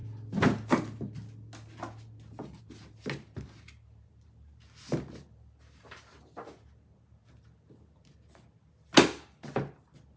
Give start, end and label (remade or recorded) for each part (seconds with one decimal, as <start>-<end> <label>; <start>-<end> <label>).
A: 0.0-10.2 recorded